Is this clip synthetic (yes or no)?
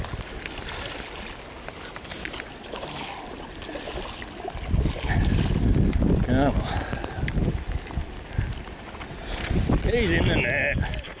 no